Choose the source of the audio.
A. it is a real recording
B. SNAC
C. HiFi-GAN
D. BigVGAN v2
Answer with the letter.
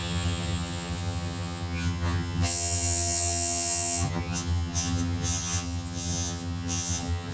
C